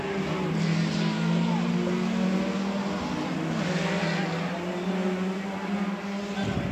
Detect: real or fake real